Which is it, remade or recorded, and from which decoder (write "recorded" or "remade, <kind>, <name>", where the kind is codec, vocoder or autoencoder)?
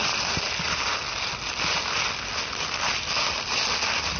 recorded